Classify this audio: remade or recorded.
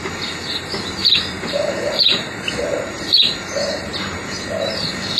remade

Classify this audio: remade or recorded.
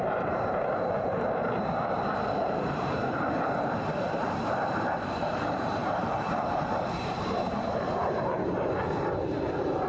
remade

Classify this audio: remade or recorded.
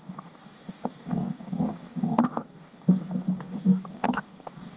remade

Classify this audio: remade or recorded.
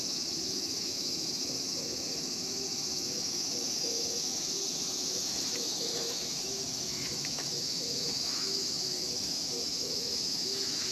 remade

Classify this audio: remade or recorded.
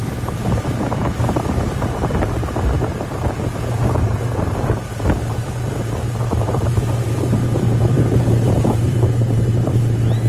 remade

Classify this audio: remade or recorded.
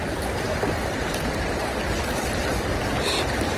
recorded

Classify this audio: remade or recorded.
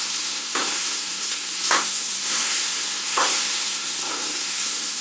remade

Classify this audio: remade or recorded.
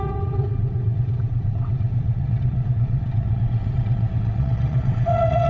remade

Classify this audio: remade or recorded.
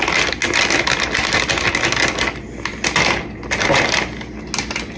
recorded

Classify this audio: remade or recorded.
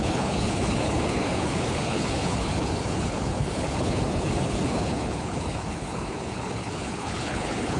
remade